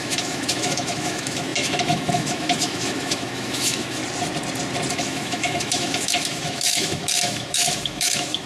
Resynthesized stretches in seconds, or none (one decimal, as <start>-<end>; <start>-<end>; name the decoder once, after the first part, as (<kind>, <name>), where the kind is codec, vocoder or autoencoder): 0.0-4.0 (autoencoder, DAC-VAE); 4.9-8.5